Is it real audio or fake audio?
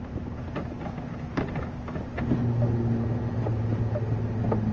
real